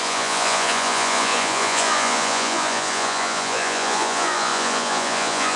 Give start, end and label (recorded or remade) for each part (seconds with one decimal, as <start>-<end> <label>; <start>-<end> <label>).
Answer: 0.0-5.6 remade